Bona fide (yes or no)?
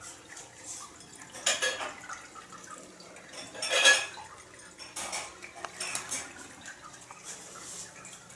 yes